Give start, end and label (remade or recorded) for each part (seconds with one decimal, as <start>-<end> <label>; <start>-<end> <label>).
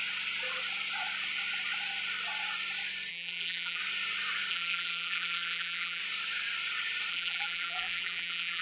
0.0-3.1 recorded; 3.1-3.8 remade; 3.8-4.5 recorded; 4.5-6.0 remade; 6.0-7.1 recorded; 7.1-8.6 remade